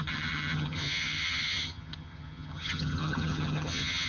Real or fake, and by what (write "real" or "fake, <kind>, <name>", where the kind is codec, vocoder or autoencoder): fake, vocoder, HiFi-GAN